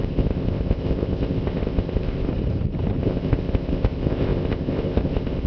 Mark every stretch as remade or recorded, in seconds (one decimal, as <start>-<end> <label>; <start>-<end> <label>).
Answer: 0.0-2.3 remade; 2.3-3.0 recorded; 3.0-5.5 remade